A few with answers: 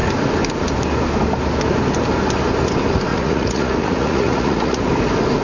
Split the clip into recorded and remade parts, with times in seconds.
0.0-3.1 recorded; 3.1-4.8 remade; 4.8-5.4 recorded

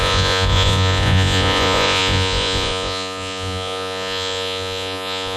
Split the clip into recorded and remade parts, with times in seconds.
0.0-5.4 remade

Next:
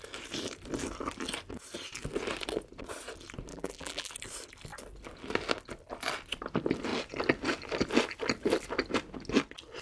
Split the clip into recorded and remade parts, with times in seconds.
0.0-3.5 recorded; 3.5-4.1 remade; 4.1-9.8 recorded

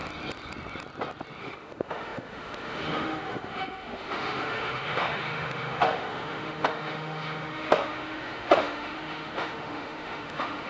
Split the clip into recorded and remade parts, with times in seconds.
0.0-1.4 recorded; 1.4-10.7 remade

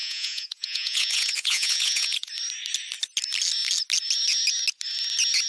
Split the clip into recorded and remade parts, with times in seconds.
0.0-2.3 remade; 2.3-5.5 recorded

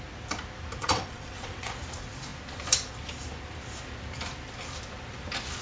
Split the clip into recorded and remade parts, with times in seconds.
0.0-0.8 recorded; 0.8-1.7 remade; 1.7-5.6 recorded

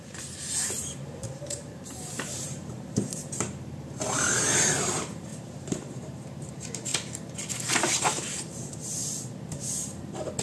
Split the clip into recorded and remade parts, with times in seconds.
0.0-6.9 remade; 6.9-7.9 recorded; 7.9-9.0 remade; 9.0-10.4 recorded

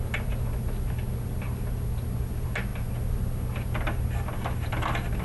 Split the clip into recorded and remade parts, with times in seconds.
0.0-5.2 recorded